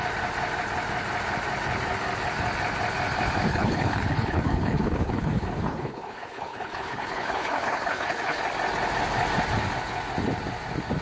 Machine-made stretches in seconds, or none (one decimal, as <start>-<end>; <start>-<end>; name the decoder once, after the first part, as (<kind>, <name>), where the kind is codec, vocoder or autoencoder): 3.5-8.4 (codec, HILCodec)